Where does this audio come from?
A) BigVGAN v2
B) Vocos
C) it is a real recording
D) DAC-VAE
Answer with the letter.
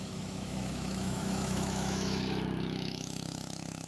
D